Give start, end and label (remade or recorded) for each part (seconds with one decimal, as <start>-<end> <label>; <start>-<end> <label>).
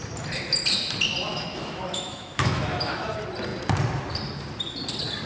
0.0-1.3 recorded; 1.3-3.1 remade; 3.1-5.3 recorded